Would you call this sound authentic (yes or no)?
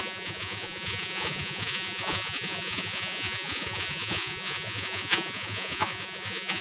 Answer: no